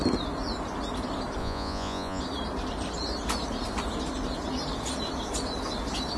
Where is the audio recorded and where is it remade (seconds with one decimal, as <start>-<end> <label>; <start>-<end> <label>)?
0.0-1.4 recorded; 1.4-2.2 remade; 2.2-6.2 recorded